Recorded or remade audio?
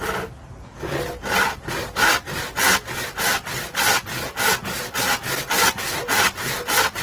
recorded